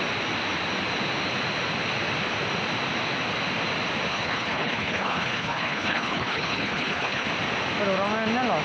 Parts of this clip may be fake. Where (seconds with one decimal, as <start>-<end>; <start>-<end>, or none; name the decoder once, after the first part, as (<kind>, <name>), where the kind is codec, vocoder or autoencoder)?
4.1-7.3 (codec, HILCodec)

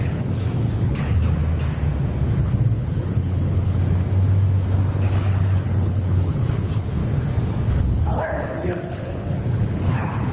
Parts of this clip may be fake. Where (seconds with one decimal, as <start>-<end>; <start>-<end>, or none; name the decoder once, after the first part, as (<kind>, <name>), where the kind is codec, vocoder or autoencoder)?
0.0-1.4 (codec, HILCodec); 2.4-3.8; 5.0-7.0; 7.7-10.3